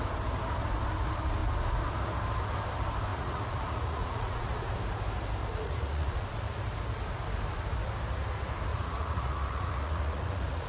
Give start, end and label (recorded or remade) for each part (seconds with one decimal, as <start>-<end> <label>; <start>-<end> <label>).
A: 0.0-3.1 recorded; 3.1-4.7 remade; 4.7-5.4 recorded; 5.4-6.3 remade; 6.3-8.7 recorded; 8.7-10.7 remade